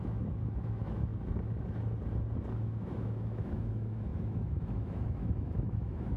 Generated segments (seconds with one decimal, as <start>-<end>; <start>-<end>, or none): 0.0-1.1; 2.6-6.2